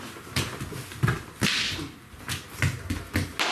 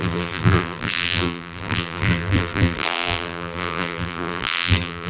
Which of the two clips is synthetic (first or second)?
second